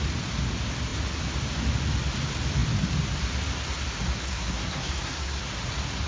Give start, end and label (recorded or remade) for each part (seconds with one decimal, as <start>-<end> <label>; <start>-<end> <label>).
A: 0.0-4.2 recorded; 4.2-5.4 remade; 5.4-6.1 recorded